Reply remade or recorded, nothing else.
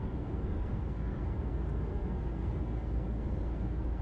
remade